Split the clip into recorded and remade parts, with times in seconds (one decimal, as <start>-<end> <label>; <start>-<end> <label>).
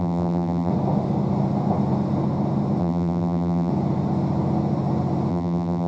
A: 0.0-0.7 remade; 0.7-2.8 recorded; 2.8-3.7 remade; 3.7-5.3 recorded; 5.3-5.9 remade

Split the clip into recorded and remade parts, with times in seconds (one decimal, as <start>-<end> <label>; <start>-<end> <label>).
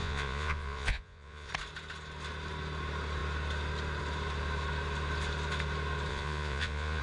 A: 0.0-1.5 remade; 1.5-6.1 recorded; 6.1-7.0 remade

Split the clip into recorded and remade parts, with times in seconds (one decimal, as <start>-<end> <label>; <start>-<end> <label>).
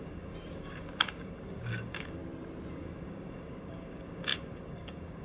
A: 0.0-2.2 remade; 2.2-2.7 recorded; 2.7-5.2 remade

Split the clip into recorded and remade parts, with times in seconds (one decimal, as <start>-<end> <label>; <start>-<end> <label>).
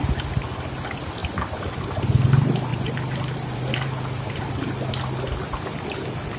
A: 0.0-2.7 recorded; 2.7-4.5 remade; 4.5-6.4 recorded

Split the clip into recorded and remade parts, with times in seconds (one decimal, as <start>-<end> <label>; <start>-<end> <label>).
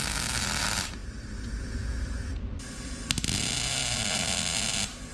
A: 0.0-5.1 recorded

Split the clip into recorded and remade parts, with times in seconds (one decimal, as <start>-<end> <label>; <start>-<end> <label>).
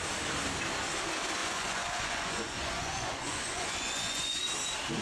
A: 0.0-1.4 recorded; 1.4-4.4 remade; 4.4-5.0 recorded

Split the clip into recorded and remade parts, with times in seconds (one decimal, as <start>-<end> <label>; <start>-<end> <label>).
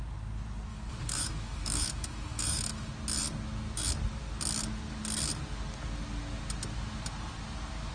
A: 0.0-0.7 recorded; 0.7-2.9 remade; 2.9-7.9 recorded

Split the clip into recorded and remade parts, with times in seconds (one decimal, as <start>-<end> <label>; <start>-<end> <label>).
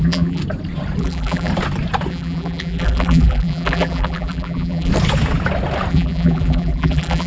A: 0.0-0.4 remade; 0.4-1.0 recorded; 1.0-1.5 remade; 1.5-2.1 recorded; 2.1-4.9 remade; 4.9-5.9 recorded; 5.9-7.3 remade